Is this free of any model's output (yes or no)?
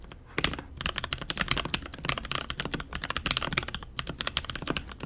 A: yes